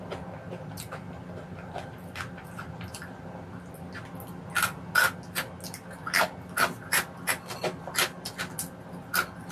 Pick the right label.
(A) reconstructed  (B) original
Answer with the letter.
B